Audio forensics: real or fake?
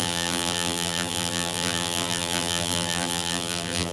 fake